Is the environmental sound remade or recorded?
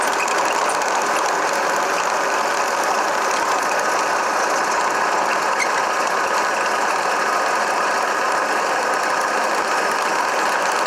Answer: recorded